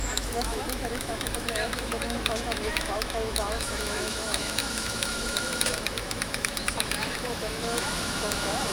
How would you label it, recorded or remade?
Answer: remade